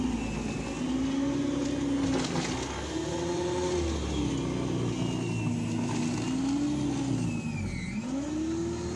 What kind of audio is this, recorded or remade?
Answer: recorded